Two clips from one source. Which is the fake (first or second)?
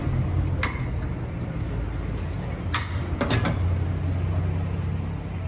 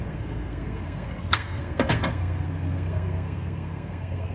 second